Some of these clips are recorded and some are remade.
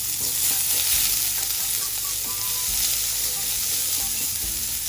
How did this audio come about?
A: recorded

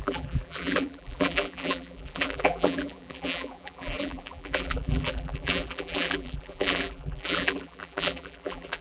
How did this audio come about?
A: remade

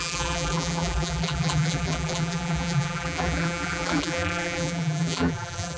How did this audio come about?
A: remade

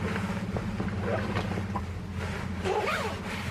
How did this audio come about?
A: recorded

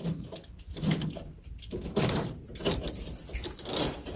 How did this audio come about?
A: recorded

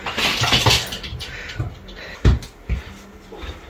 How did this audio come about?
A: recorded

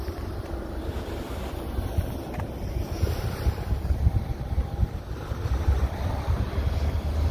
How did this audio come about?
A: remade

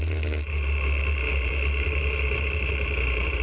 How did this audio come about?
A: remade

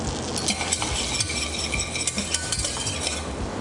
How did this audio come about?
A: recorded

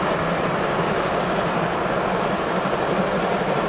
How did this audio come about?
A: remade